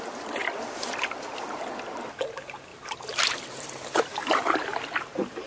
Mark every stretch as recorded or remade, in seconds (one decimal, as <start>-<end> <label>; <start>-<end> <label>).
0.0-2.7 recorded; 2.7-4.0 remade; 4.0-5.5 recorded

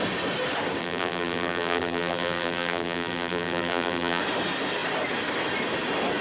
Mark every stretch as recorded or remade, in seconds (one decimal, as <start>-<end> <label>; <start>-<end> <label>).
0.0-0.8 recorded; 0.8-4.2 remade; 4.2-6.2 recorded

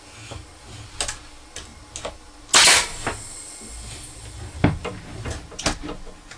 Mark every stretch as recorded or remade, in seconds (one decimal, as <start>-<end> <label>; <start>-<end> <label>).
0.0-6.4 recorded

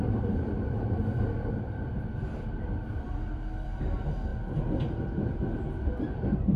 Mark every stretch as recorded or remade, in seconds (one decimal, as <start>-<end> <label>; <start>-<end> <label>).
0.0-4.3 remade; 4.3-6.6 recorded

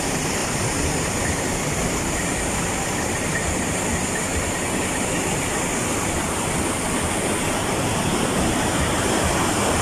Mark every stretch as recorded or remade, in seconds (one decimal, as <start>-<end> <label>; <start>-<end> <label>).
0.0-0.4 recorded; 0.4-3.0 remade; 3.0-5.9 recorded; 5.9-7.0 remade; 7.0-8.1 recorded; 8.1-8.7 remade; 8.7-9.8 recorded